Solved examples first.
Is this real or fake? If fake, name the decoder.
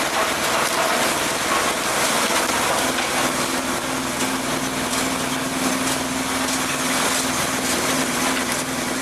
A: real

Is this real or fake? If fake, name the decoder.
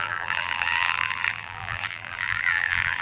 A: fake, vocoder, BigVGAN v2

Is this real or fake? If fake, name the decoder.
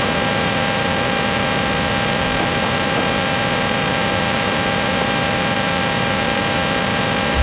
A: fake, vocoder, BigVGAN v2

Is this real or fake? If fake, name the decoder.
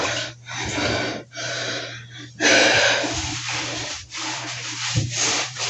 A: fake, vocoder, BigVGAN v2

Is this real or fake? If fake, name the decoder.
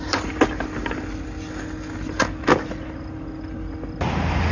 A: real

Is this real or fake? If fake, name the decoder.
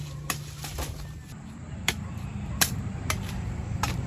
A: fake, vocoder, BigVGAN v2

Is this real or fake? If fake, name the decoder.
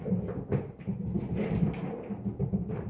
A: real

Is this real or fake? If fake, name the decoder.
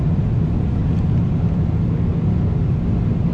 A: real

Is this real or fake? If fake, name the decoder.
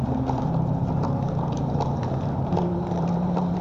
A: fake, vocoder, BigVGAN v2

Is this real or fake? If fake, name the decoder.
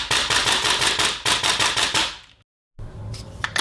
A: real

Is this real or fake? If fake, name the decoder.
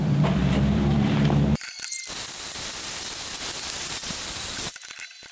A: fake, vocoder, BigVGAN v2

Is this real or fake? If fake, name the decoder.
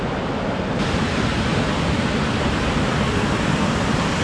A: real